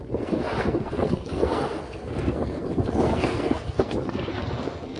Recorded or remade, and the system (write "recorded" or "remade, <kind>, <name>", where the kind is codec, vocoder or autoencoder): remade, codec, SNAC